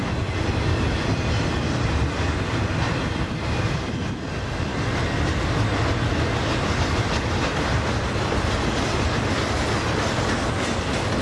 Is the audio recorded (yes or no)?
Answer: yes